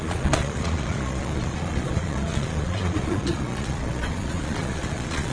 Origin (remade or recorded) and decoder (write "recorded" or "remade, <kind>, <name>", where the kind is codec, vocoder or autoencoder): remade, vocoder, Vocos